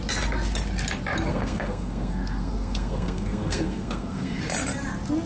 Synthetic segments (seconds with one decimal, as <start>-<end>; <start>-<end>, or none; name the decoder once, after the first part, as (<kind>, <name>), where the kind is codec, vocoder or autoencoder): 1.3-4.4 (codec, SNAC)